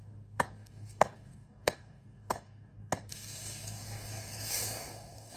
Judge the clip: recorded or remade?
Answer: remade